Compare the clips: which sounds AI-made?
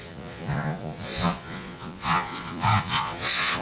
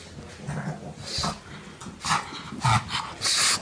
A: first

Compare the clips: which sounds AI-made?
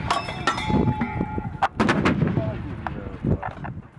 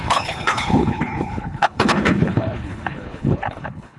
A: second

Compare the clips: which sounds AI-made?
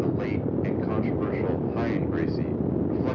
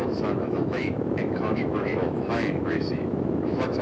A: second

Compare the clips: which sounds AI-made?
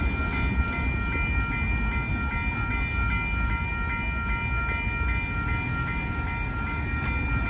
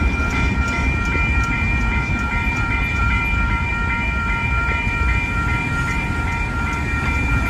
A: second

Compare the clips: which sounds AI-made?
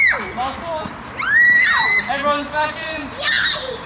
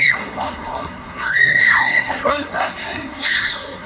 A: second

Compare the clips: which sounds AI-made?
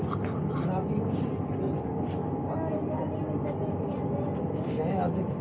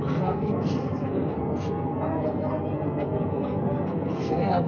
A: second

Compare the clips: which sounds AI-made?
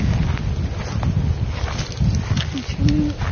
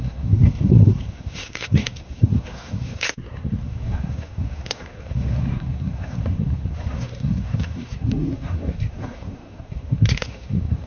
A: second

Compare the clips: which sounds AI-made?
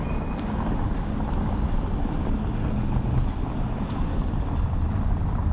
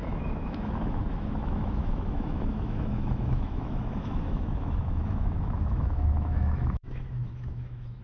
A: second